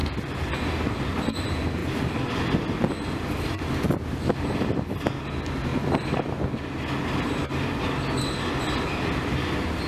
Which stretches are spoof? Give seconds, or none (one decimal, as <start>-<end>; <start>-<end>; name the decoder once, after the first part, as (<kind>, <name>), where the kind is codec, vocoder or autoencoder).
none